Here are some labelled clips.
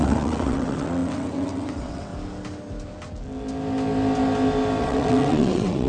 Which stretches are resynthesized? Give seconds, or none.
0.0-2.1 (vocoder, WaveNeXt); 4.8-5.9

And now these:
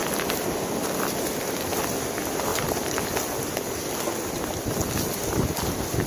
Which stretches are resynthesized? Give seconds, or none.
none